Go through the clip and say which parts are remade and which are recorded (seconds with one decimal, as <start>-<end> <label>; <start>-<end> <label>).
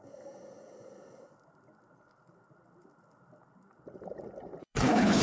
0.0-4.6 recorded; 4.6-5.2 remade